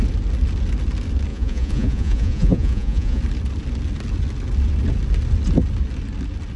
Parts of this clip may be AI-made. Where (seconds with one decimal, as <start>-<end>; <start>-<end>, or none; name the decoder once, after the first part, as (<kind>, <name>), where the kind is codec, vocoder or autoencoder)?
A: 1.3-3.2 (vocoder, Vocos)